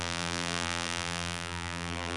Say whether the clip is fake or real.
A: fake